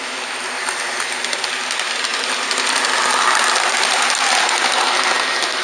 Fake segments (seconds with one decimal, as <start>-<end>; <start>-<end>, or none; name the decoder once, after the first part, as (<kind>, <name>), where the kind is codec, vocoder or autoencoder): none